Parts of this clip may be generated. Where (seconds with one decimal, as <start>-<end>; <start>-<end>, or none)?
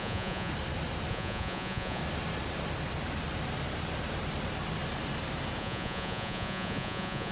0.0-0.5; 1.1-2.0; 5.6-7.3